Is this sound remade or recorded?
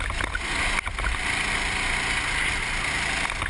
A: recorded